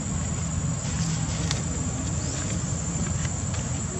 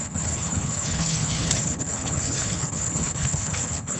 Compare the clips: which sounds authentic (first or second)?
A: first